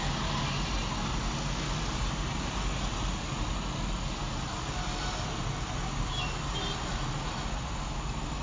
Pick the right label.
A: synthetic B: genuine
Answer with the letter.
B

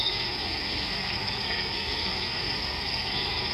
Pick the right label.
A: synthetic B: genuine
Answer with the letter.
A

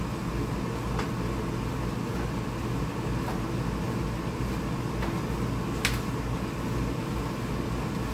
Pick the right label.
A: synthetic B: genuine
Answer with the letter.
B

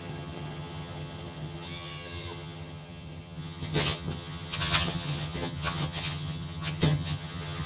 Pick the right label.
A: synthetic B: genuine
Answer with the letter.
A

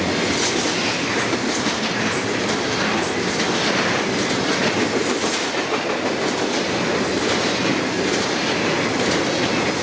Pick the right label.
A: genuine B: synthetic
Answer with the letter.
A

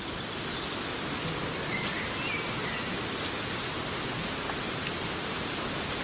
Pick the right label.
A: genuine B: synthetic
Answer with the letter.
A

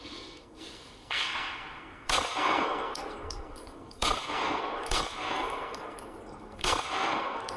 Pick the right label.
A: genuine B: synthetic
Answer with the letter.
B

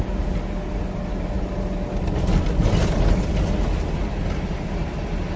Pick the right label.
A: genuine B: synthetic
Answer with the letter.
A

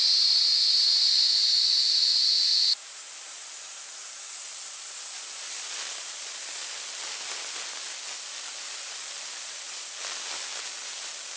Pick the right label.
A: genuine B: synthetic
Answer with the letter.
A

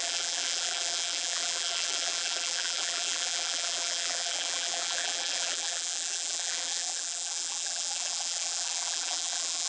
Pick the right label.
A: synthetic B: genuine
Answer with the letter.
A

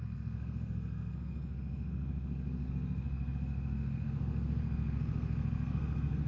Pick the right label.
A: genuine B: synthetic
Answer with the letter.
B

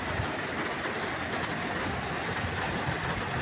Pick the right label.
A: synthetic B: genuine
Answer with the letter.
B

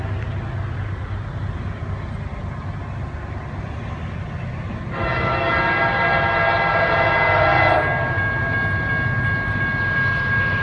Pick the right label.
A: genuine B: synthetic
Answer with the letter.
A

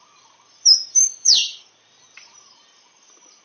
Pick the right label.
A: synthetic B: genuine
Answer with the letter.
B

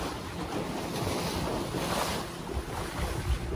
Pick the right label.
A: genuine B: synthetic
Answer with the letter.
A